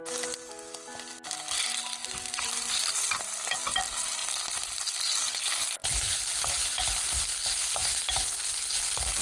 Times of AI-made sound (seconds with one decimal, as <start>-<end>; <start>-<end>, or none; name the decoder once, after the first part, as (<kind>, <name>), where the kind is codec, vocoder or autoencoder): 2.0-2.9 (vocoder, BigVGAN v2); 5.8-7.1